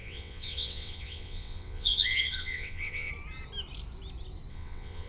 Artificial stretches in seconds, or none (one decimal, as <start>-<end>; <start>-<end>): 0.0-3.1; 4.5-5.1